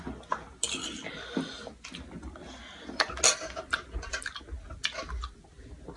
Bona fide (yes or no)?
yes